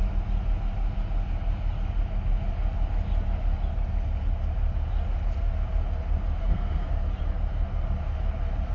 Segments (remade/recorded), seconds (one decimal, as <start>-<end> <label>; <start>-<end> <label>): 0.0-6.4 recorded; 6.4-6.9 remade; 6.9-8.7 recorded